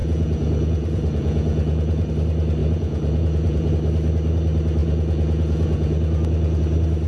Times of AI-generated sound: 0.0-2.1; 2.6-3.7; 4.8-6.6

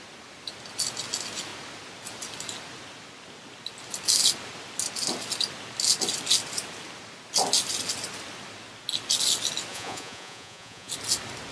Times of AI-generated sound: 9.7-10.9

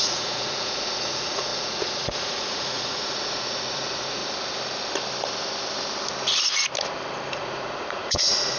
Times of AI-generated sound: 0.0-4.2; 7.3-8.6

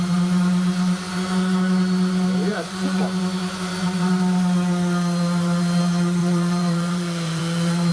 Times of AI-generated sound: 2.5-3.0; 6.2-7.9

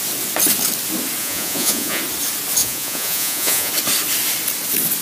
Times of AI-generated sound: 1.2-2.0; 2.6-3.7

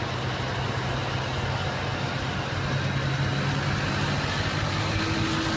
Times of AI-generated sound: none

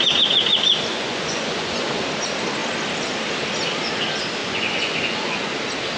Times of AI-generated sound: 0.9-2.0; 4.4-5.5

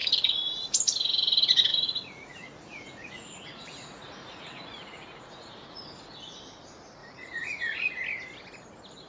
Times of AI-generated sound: 0.0-0.8; 1.7-5.5; 7.0-8.0